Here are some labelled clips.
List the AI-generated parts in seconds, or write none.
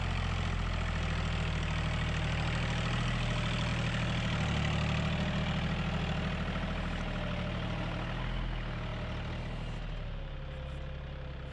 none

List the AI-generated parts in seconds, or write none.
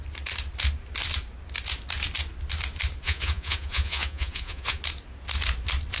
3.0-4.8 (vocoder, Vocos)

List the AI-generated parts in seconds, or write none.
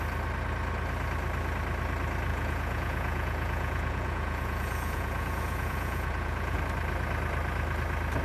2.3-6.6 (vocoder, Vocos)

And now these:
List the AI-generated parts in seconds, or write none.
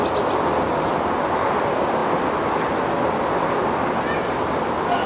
2.0-3.9 (vocoder, BigVGAN v2)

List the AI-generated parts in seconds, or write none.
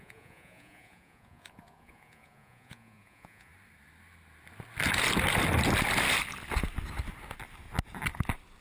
0.0-3.5 (vocoder, Vocos)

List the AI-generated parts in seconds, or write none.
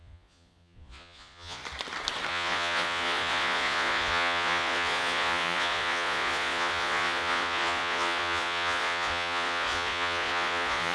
0.0-1.6 (vocoder, Vocos); 2.3-10.9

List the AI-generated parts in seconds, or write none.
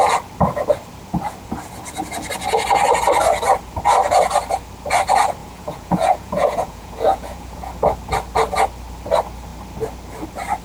5.4-7.7 (vocoder, Vocos)